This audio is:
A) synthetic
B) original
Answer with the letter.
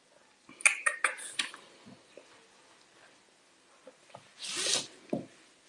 B